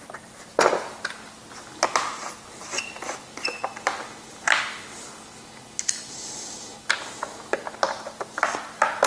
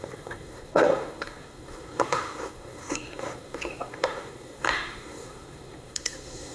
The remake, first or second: second